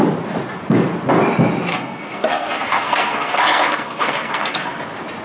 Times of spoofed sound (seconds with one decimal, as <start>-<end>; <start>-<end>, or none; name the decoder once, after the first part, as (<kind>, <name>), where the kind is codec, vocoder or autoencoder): 1.7-4.8 (codec, SNAC)